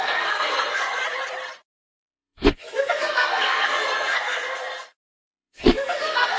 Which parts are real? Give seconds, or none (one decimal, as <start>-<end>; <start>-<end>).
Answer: 1.0-1.7